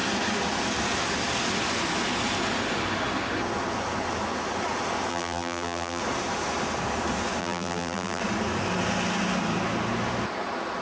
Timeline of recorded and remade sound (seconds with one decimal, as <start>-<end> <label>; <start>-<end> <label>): 0.0-5.1 recorded; 5.1-6.0 remade; 6.0-7.4 recorded; 7.4-8.2 remade; 8.2-10.8 recorded